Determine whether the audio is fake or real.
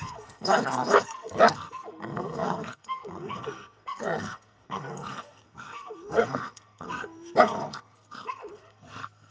fake